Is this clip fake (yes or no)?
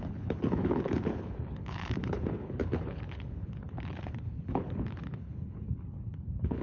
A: yes